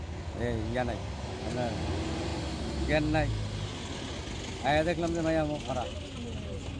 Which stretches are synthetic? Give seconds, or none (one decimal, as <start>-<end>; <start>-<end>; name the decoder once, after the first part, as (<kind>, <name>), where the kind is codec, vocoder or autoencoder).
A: none